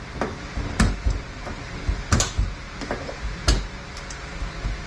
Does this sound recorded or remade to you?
recorded